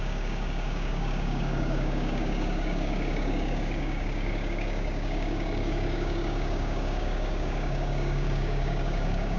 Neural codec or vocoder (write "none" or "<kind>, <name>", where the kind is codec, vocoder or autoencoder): codec, DAC